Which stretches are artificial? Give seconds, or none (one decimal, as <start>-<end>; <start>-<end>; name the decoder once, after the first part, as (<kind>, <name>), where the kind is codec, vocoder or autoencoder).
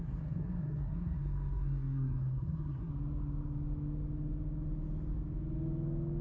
0.0-2.9 (codec, SNAC)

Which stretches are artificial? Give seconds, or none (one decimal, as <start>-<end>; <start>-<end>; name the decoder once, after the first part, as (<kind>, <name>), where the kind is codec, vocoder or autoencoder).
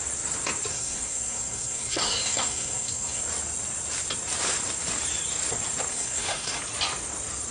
0.7-3.2 (codec, SNAC); 5.9-6.6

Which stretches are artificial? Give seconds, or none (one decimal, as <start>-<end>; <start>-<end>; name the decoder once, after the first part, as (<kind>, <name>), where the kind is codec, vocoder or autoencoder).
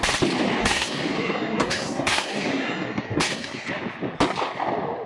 0.6-3.7 (codec, SNAC)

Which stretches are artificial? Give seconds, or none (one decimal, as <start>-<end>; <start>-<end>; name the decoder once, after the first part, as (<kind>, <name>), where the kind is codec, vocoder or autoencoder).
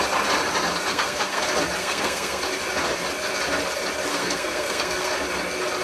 0.9-1.4 (codec, SNAC); 1.8-2.4; 4.1-5.1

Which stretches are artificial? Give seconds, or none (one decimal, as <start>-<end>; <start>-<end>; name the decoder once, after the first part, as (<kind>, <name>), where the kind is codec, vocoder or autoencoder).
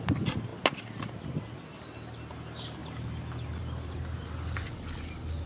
none